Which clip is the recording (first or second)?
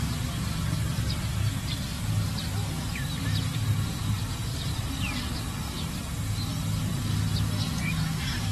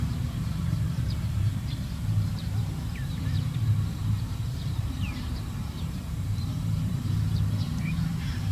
first